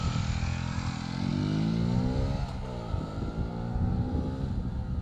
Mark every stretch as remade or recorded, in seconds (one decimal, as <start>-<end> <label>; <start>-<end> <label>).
0.0-5.0 recorded